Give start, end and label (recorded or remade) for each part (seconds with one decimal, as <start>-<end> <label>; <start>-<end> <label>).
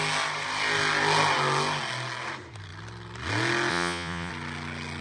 0.0-3.7 recorded; 3.7-4.3 remade; 4.3-5.0 recorded